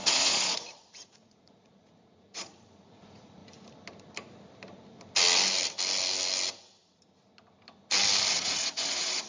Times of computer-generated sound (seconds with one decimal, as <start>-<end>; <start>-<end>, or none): 0.0-3.4; 8.3-9.3

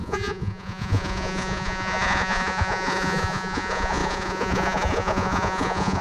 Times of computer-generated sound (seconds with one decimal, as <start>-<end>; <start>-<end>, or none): 0.0-6.0

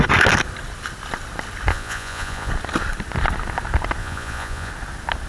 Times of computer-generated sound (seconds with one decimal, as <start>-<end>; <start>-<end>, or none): 1.7-2.5; 4.0-4.7

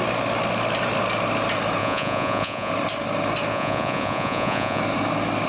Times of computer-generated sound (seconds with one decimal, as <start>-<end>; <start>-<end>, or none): 1.8-2.7; 3.5-4.8

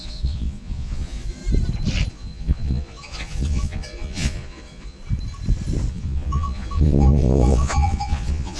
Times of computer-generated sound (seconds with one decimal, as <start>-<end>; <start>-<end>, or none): 0.0-1.4; 2.1-5.0; 5.9-8.6